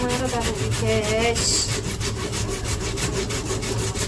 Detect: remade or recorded recorded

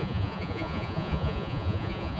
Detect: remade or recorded remade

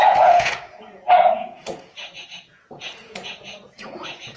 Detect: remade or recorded remade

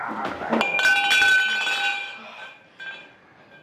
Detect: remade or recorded recorded